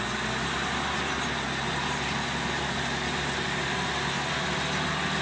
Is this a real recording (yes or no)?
yes